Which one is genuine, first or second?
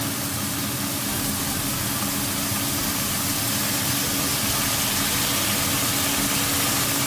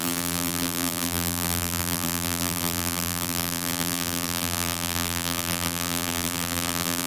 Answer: first